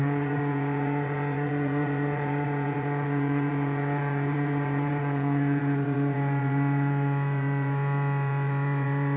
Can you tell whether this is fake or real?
fake